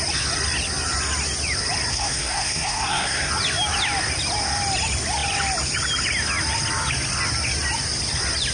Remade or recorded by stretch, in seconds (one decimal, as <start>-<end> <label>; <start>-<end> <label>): 0.0-1.9 recorded; 1.9-3.3 remade; 3.3-8.5 recorded